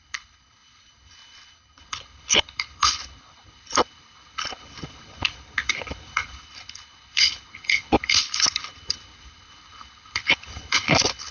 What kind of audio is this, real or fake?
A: fake